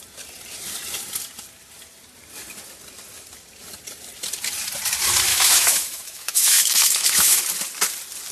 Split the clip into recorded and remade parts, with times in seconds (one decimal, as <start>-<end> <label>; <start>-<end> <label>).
0.0-5.3 recorded; 5.3-7.4 remade; 7.4-8.3 recorded